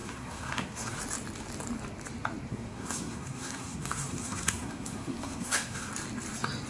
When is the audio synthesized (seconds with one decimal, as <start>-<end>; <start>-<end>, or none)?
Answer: 0.0-1.0; 2.5-5.9